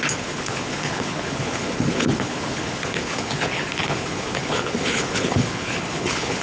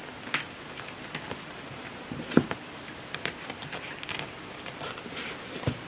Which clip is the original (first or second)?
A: second